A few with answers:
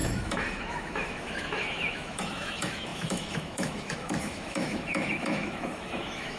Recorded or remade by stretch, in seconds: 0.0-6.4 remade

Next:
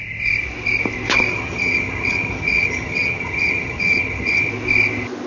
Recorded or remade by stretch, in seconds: 0.0-1.3 recorded; 1.3-4.5 remade; 4.5-5.3 recorded

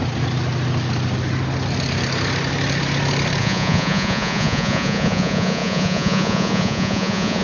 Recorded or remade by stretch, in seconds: 0.0-3.4 recorded; 3.4-7.4 remade

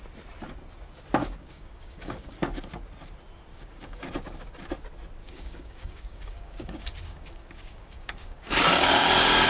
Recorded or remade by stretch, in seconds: 0.0-1.2 recorded; 1.2-2.6 remade; 2.6-3.5 recorded; 3.5-4.1 remade; 4.1-5.2 recorded; 5.2-9.5 remade

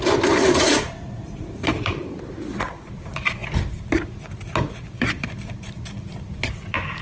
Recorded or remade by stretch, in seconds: 0.0-0.4 recorded; 0.4-1.7 remade; 1.7-7.0 recorded

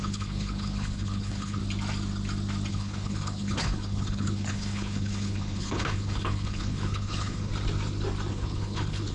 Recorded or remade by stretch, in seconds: 0.0-1.6 remade; 1.6-2.7 recorded; 2.7-7.5 remade; 7.5-8.3 recorded; 8.3-9.1 remade

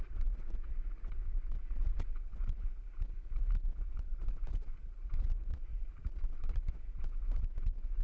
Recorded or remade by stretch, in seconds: 0.0-2.6 remade; 2.6-3.7 recorded; 3.7-8.0 remade

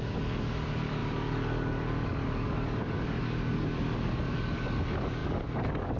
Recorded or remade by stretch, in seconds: 0.0-6.0 remade